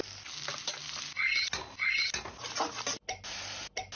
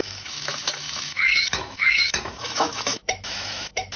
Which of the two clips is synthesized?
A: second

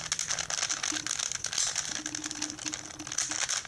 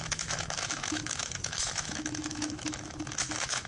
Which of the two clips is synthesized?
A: second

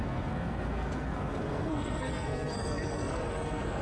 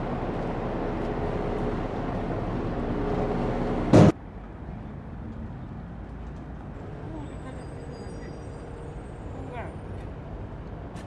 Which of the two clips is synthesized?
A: first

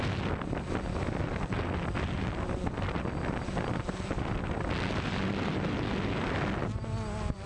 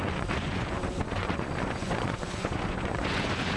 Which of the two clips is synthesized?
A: second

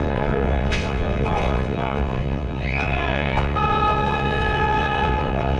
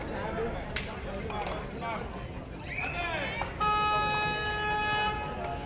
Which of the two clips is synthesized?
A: first